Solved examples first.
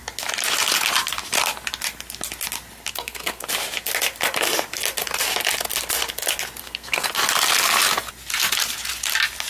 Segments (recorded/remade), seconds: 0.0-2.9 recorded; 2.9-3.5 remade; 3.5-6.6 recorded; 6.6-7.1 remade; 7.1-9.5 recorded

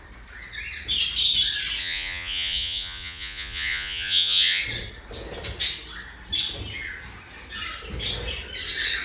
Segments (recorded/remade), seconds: 0.0-1.8 recorded; 1.8-4.6 remade; 4.6-9.0 recorded

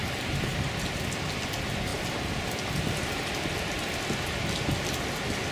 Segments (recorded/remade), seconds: 0.0-1.9 recorded; 1.9-2.7 remade; 2.7-5.5 recorded

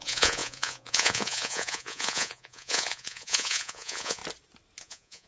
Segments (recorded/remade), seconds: 0.0-4.2 remade; 4.2-4.8 recorded; 4.8-5.3 remade

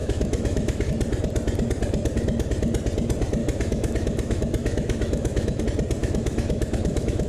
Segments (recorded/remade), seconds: 0.0-0.9 remade; 0.9-3.4 recorded; 3.4-5.6 remade; 5.6-6.0 recorded; 6.0-7.3 remade

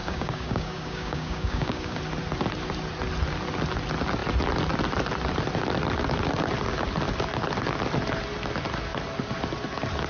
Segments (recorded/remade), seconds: 0.0-2.0 remade; 2.0-10.1 recorded

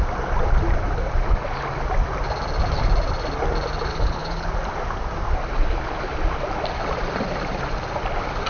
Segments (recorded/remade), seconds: 0.0-3.9 recorded; 3.9-4.5 remade; 4.5-8.5 recorded

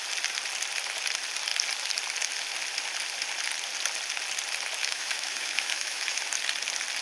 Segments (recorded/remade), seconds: 0.0-4.8 recorded; 4.8-6.2 remade; 6.2-7.0 recorded